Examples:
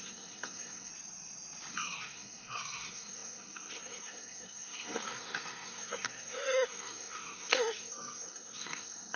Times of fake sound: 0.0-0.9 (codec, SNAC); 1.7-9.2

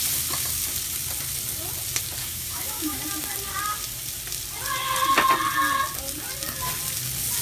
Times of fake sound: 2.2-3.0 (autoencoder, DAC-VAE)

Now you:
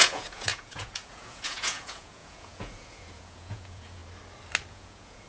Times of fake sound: 0.0-4.0 (vocoder, Vocos); 4.7-5.3

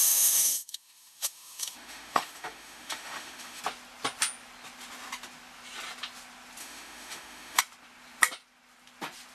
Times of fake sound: 0.0-3.6 (autoencoder, DAC-VAE); 6.6-7.6

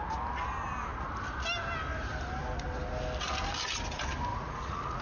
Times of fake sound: 4.3-5.0 (vocoder, Vocos)

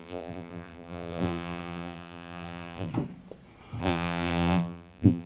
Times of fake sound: 0.0-2.9 (vocoder, BigVGAN v2); 3.8-5.3

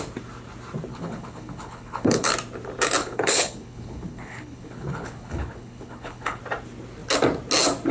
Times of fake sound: 0.9-2.3 (codec, HILCodec); 3.0-6.4

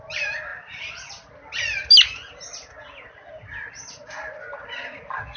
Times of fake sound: none